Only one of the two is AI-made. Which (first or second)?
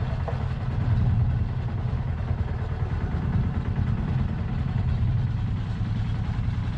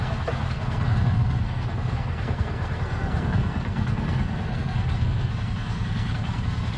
second